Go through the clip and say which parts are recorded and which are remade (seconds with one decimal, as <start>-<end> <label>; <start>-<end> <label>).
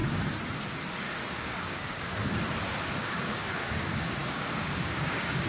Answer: 0.0-1.3 recorded; 1.3-2.1 remade; 2.1-3.0 recorded; 3.0-5.5 remade